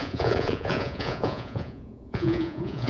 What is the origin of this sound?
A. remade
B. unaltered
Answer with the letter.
A